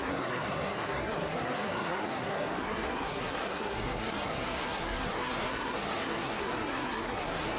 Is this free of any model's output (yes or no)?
no